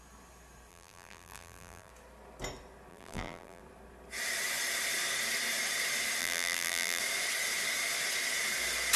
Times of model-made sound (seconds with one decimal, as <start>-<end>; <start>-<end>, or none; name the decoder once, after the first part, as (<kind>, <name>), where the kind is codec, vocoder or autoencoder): 0.7-1.9 (vocoder, BigVGAN v2); 2.9-3.6; 6.2-7.0